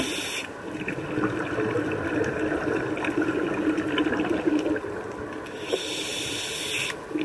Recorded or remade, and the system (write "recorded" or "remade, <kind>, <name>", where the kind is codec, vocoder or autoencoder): recorded